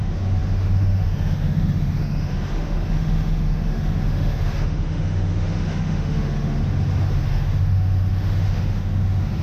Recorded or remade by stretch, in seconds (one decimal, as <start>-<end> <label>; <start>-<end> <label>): 0.0-6.6 remade; 6.6-7.3 recorded; 7.3-9.4 remade